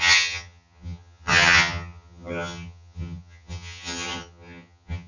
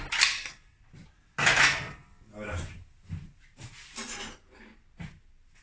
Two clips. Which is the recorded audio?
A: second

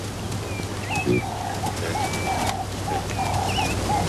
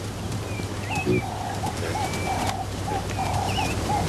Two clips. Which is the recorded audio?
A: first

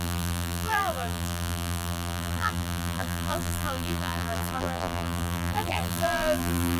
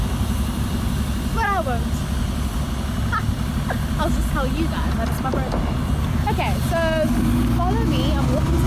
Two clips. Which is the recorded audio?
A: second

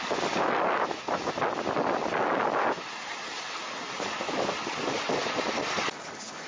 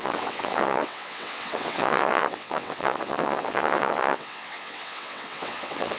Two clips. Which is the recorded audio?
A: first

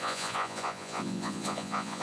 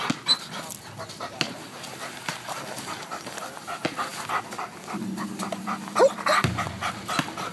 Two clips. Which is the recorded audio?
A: second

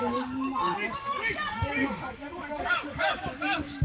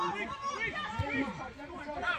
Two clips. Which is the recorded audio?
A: second